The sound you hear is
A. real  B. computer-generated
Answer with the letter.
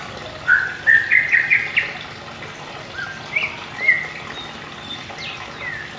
A